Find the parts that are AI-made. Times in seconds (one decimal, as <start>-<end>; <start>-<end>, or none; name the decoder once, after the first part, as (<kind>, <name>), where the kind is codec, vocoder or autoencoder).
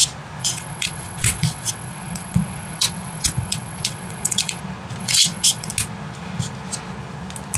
0.4-4.6 (vocoder, WaveNeXt); 5.0-5.7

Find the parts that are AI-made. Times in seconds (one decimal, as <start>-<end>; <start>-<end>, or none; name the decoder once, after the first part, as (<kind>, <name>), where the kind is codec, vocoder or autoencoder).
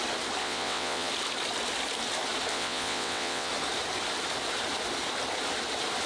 0.4-1.1 (vocoder, WaveNeXt); 2.5-3.5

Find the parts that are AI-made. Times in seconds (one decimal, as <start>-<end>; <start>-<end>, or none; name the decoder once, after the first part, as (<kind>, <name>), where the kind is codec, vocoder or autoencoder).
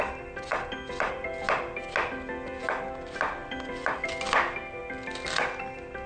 none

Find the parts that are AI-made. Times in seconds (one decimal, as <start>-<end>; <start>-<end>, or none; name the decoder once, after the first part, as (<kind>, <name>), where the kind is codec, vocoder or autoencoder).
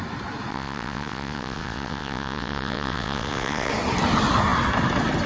0.5-3.7 (vocoder, WaveNeXt)